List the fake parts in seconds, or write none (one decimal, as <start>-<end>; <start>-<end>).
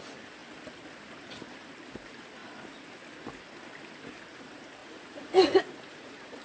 4.8-6.4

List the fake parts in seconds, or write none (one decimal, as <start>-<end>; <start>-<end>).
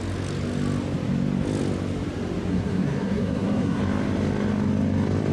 2.5-3.8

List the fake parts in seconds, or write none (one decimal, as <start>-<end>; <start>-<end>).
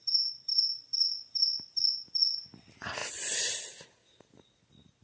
0.5-1.9; 3.0-3.6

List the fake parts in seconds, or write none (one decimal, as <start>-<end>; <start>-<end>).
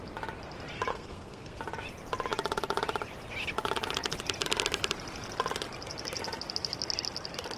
0.9-1.6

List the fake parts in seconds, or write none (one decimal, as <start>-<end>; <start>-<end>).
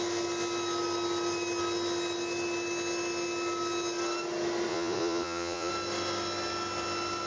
4.7-5.7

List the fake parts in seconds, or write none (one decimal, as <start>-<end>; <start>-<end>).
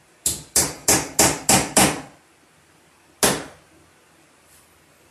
none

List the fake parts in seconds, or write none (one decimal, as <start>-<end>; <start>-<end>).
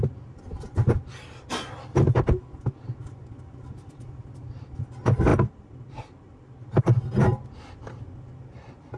none